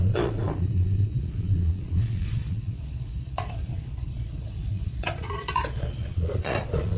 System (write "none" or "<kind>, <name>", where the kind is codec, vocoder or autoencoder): vocoder, Vocos